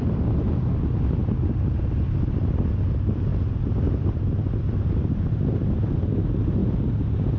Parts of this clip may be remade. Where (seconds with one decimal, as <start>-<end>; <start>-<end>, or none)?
none